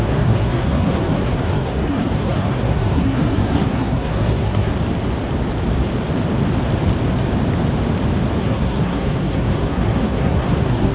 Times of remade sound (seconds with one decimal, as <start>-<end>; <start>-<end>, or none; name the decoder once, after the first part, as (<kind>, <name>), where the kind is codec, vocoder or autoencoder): 0.0-4.7 (codec, SNAC); 8.4-10.9

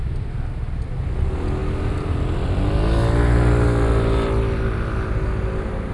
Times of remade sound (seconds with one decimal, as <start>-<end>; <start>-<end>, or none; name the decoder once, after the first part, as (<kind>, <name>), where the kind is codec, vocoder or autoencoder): none

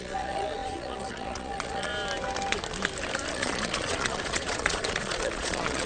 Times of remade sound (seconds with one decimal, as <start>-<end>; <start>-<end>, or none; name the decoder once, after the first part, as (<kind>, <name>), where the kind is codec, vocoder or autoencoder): 0.0-1.9 (vocoder, Vocos); 3.3-5.9

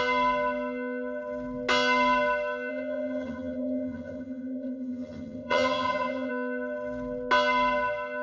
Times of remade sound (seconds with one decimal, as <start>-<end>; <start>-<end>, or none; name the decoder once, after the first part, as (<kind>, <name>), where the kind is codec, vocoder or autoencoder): 2.7-6.3 (vocoder, HiFi-GAN)

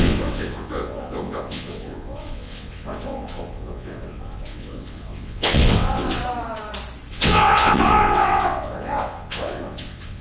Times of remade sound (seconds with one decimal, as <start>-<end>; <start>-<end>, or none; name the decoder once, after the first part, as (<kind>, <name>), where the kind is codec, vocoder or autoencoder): 0.0-6.2 (vocoder, WaveNeXt); 7.1-10.2

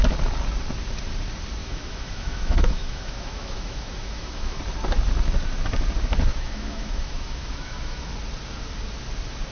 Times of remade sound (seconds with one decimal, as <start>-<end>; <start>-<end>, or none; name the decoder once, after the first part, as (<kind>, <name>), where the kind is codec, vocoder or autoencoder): 1.6-4.6 (autoencoder, DAC-VAE); 6.3-8.1

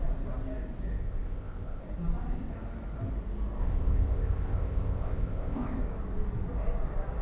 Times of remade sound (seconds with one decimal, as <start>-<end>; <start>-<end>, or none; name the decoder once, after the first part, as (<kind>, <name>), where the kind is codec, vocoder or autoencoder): 1.0-1.8 (codec, ZipCodec); 3.6-5.8